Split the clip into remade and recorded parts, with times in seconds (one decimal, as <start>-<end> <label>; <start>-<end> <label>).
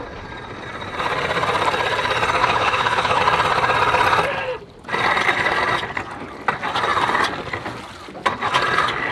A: 0.0-2.4 recorded; 2.4-3.2 remade; 3.2-9.1 recorded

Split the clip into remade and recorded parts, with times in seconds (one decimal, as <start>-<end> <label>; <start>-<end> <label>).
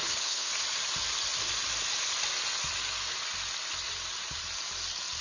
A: 0.0-0.5 remade; 0.5-5.2 recorded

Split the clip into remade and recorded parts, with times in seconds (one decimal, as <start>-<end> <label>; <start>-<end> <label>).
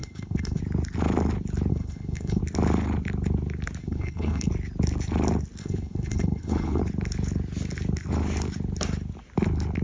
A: 0.0-0.6 remade; 0.6-1.7 recorded; 1.7-2.4 remade; 2.4-3.8 recorded; 3.8-4.5 remade; 4.5-5.6 recorded; 5.6-6.8 remade; 6.8-9.8 recorded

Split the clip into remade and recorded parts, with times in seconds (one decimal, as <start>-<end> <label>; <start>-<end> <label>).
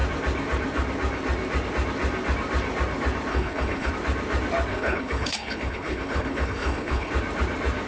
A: 0.0-3.3 recorded; 3.3-3.9 remade; 3.9-4.7 recorded; 4.7-7.1 remade; 7.1-7.9 recorded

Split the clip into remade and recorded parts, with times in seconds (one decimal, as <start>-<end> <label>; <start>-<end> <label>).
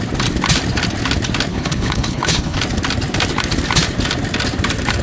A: 0.0-1.5 recorded; 1.5-2.6 remade; 2.6-5.0 recorded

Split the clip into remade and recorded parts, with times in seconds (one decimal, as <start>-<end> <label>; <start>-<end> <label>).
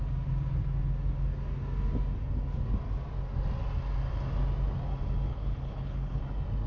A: 0.0-5.3 recorded; 5.3-6.2 remade; 6.2-6.7 recorded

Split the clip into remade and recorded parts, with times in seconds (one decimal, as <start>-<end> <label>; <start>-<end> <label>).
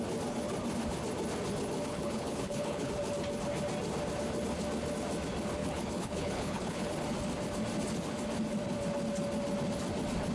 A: 0.0-1.9 recorded; 1.9-2.9 remade; 2.9-5.6 recorded; 5.6-6.9 remade; 6.9-10.3 recorded